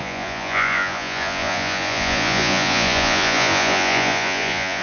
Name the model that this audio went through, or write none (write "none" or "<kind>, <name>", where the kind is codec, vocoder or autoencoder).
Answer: vocoder, Vocos